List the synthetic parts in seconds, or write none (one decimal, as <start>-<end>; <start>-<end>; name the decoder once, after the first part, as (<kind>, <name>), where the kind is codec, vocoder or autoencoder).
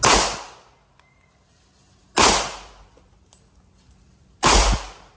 none